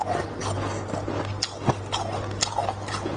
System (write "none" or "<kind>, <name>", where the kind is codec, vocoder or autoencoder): none